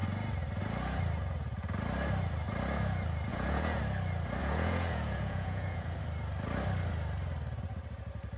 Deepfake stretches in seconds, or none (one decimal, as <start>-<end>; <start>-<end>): 3.3-3.8; 4.4-6.0